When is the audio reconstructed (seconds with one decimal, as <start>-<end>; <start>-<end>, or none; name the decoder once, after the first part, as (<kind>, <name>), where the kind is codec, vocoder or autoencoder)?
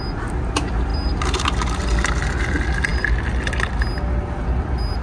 0.9-1.4 (vocoder, BigVGAN v2)